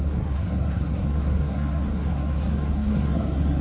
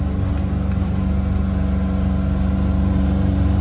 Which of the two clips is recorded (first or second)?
second